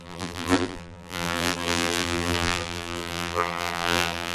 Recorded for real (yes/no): no